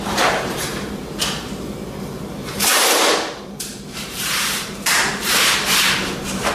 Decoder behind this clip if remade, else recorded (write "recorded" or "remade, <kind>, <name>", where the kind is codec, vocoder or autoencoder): remade, vocoder, BigVGAN v2